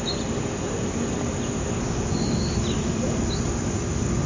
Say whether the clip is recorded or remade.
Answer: recorded